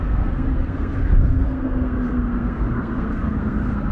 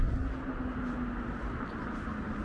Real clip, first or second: second